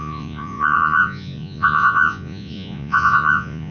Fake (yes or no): yes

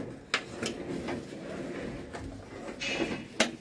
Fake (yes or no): no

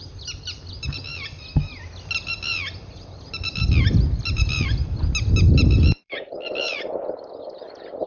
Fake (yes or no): yes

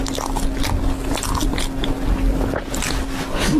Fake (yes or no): no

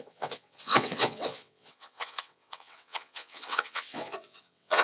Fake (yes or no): yes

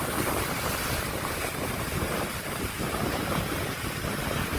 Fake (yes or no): no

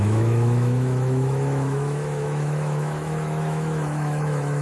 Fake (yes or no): yes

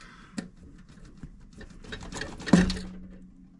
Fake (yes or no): no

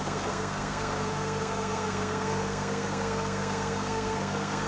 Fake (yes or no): yes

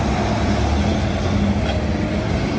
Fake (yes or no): no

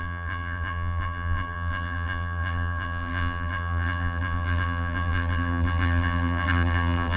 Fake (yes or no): yes